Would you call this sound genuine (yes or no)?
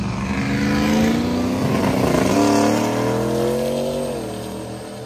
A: yes